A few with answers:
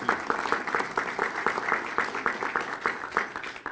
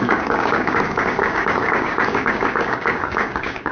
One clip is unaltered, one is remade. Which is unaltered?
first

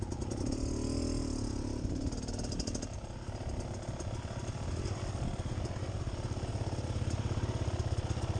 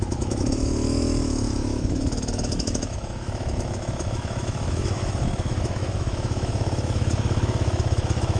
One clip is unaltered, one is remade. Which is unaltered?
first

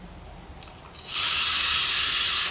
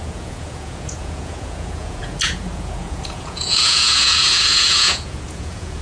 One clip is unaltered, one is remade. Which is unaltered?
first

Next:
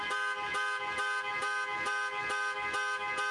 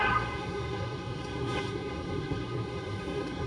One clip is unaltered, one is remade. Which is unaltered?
first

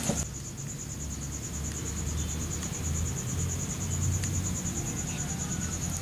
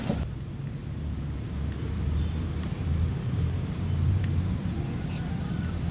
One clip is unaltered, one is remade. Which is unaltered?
first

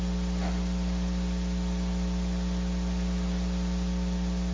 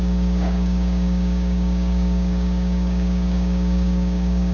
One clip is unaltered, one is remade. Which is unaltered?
first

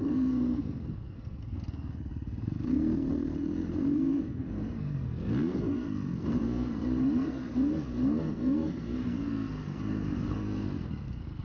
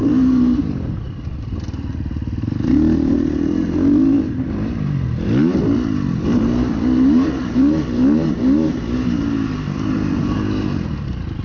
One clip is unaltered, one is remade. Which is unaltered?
second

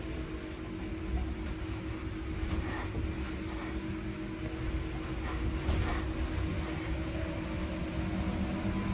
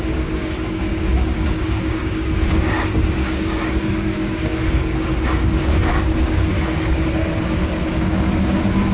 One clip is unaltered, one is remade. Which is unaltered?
first